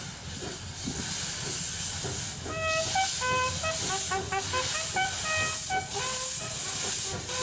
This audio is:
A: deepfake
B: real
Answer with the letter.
B